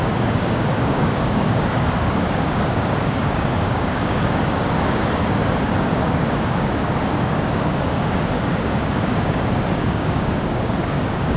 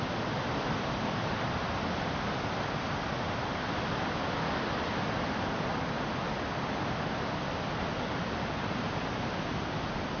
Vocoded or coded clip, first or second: first